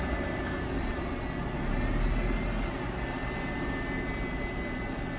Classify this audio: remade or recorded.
recorded